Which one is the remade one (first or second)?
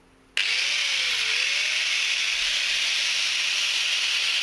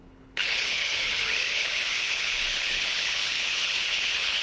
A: second